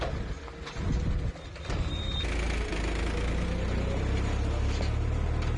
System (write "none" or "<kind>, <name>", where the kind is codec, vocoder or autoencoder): none